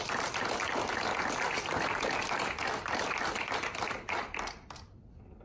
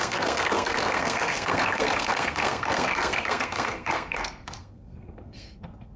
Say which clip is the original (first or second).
first